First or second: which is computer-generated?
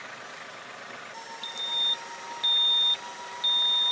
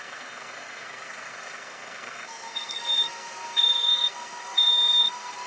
second